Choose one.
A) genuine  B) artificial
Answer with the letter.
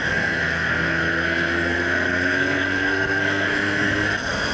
B